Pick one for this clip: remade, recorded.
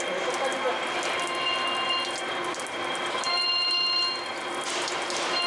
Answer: recorded